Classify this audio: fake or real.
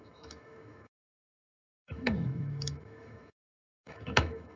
fake